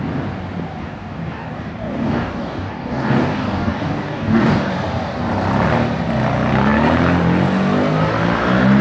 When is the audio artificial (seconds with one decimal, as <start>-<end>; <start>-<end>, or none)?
0.8-4.7